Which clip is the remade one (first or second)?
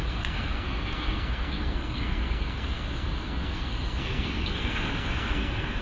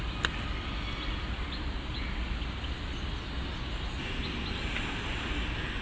first